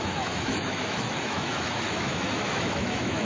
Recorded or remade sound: remade